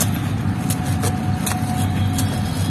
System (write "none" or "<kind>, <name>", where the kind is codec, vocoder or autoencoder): none